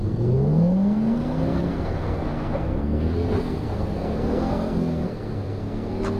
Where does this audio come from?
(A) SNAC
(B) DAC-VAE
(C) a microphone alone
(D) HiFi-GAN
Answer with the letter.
A